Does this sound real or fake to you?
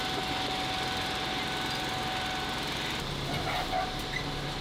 real